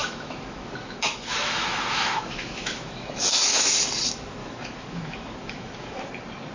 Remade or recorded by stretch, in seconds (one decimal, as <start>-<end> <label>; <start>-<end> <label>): 0.0-3.8 remade; 3.8-4.4 recorded; 4.4-6.1 remade; 6.1-6.5 recorded